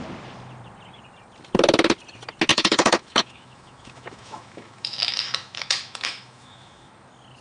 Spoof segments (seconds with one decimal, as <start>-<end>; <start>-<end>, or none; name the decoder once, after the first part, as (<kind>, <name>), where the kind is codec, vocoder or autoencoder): 2.5-6.9 (autoencoder, DAC-VAE)